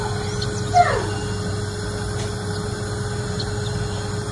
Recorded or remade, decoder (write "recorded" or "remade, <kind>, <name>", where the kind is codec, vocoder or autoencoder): recorded